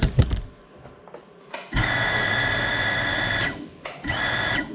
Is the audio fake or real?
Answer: real